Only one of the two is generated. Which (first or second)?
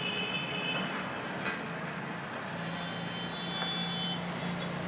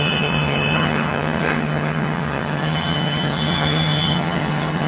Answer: second